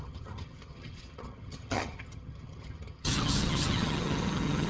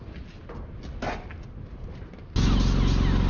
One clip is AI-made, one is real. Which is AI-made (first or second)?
first